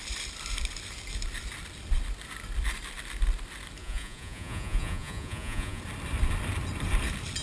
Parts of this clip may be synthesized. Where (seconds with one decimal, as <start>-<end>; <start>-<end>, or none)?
3.8-5.8